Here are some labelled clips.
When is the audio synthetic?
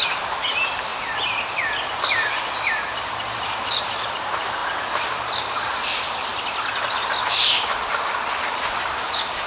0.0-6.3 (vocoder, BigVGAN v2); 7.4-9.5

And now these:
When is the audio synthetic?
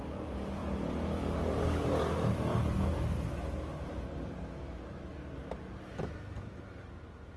none